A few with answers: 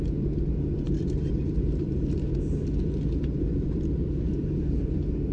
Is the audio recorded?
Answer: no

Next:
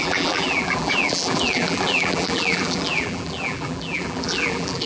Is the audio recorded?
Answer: no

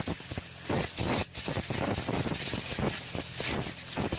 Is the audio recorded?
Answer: yes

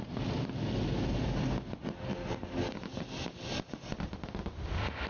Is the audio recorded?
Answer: yes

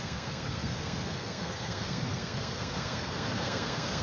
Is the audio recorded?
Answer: no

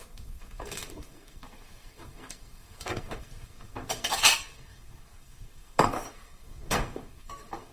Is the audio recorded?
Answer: no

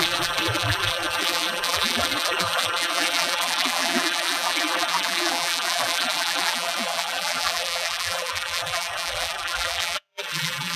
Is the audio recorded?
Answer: no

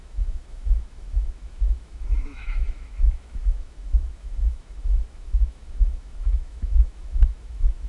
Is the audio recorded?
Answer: no